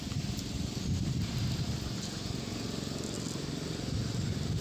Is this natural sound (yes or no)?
yes